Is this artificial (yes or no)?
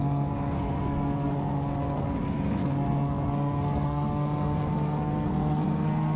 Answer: yes